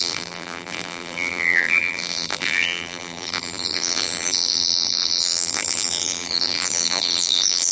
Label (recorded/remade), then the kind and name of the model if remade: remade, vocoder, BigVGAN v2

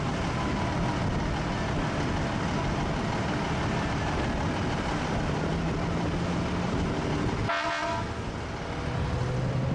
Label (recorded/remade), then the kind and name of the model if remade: recorded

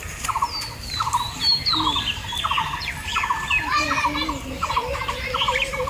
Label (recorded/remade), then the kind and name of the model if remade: recorded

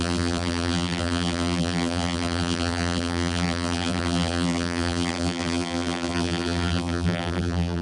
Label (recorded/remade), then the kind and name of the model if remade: remade, vocoder, BigVGAN v2